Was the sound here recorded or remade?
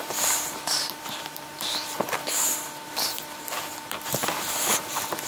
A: remade